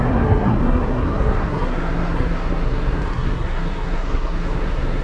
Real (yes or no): no